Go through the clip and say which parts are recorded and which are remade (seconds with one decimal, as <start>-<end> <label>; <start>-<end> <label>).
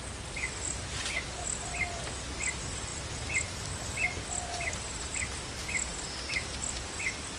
0.0-7.4 recorded